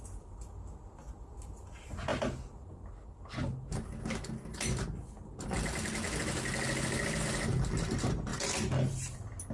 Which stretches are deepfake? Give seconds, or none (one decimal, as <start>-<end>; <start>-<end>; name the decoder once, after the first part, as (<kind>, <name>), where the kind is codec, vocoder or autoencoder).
none